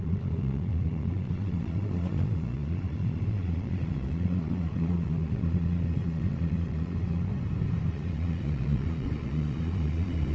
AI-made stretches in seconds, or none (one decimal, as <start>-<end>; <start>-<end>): 0.0-7.3; 7.9-10.3